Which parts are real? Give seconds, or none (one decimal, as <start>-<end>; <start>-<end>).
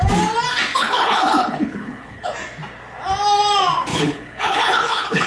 0.0-0.7; 2.3-3.9